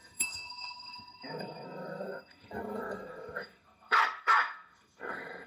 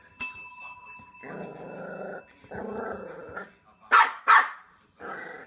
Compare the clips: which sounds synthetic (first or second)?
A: first